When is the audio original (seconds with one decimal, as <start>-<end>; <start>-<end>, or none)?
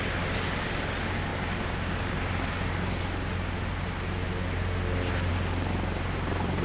0.0-6.6